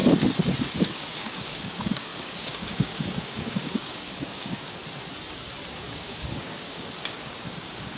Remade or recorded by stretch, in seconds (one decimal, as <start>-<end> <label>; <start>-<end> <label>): 0.0-0.8 recorded; 0.8-4.8 remade; 4.8-5.7 recorded; 5.7-8.0 remade

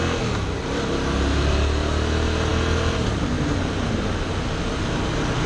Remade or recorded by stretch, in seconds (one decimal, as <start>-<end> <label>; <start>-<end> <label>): 0.0-5.5 recorded

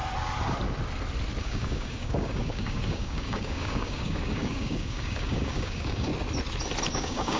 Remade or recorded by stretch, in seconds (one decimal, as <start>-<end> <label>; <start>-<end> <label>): 0.0-1.4 recorded; 1.4-6.1 remade; 6.1-6.9 recorded; 6.9-7.4 remade

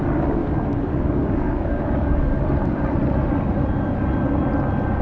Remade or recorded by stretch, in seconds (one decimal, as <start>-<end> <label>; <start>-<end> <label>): 0.0-0.4 recorded; 0.4-2.2 remade; 2.2-5.0 recorded